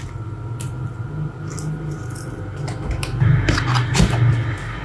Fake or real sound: fake